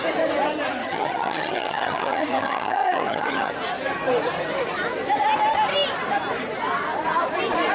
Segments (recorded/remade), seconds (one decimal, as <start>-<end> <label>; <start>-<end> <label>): 0.0-0.8 recorded; 0.8-3.5 remade; 3.5-7.7 recorded